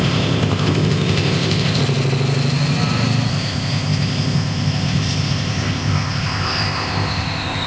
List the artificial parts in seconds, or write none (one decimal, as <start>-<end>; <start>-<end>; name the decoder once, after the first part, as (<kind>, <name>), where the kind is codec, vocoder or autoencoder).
0.0-1.8 (codec, ZipCodec); 3.3-7.7